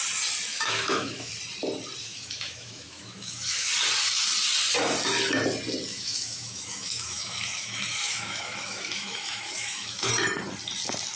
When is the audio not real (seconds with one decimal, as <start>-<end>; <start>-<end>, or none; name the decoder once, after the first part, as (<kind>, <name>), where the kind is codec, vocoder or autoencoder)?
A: 0.5-1.3 (autoencoder, DAC-VAE); 2.0-3.7; 5.9-10.1